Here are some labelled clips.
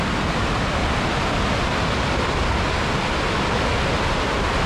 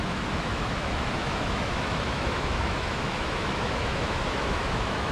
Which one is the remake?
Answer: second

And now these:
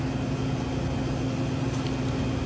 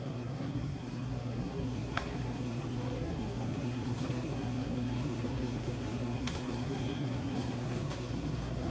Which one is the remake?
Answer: second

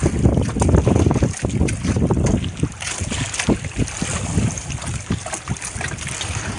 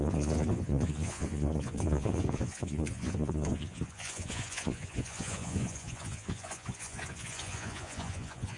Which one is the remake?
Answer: second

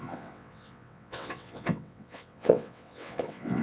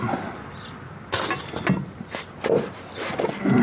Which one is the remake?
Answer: first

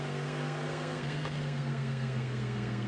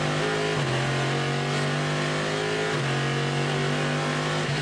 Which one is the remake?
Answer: first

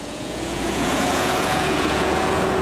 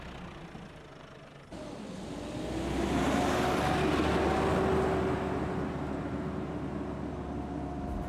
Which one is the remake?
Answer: first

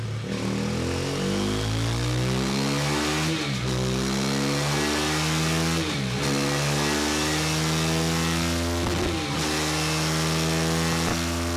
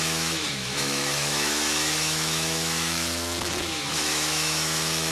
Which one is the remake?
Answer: second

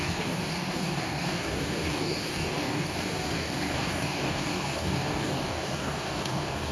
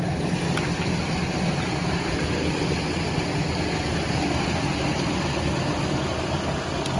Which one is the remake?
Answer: first